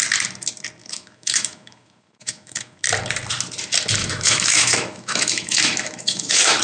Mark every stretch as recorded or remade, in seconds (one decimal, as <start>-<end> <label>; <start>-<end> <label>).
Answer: 0.0-0.8 recorded; 0.8-2.8 remade; 2.8-4.0 recorded; 4.0-6.6 remade